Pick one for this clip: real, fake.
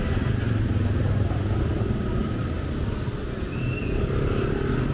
real